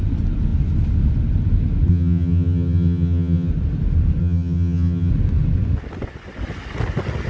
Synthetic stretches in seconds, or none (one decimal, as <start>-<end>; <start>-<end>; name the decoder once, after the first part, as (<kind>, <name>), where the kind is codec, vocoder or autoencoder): 1.9-3.5 (vocoder, HiFi-GAN); 4.2-5.1